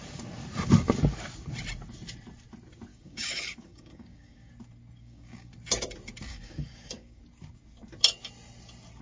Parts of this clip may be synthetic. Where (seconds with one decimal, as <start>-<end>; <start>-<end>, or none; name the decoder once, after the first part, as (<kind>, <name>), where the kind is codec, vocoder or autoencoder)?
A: 2.9-4.5 (codec, DAC); 5.0-5.5; 6.3-7.2